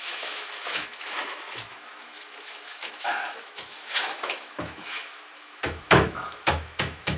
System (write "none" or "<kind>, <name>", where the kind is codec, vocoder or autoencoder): autoencoder, DAC-VAE